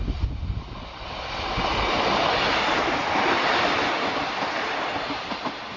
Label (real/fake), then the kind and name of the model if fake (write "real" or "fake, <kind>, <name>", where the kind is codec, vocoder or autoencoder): real